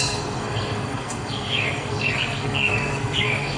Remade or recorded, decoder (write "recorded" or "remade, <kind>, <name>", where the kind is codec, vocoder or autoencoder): remade, codec, SNAC